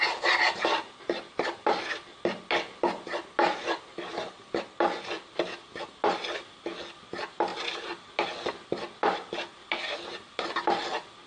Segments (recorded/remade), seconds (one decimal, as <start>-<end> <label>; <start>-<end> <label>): 0.0-11.3 recorded